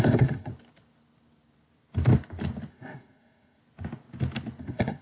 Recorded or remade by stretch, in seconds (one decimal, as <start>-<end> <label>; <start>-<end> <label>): 0.0-0.5 remade; 0.5-2.7 recorded; 2.7-3.6 remade; 3.6-4.6 recorded; 4.6-5.0 remade